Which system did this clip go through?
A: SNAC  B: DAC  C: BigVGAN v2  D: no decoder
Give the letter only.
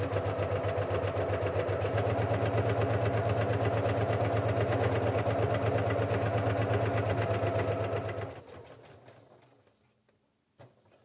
D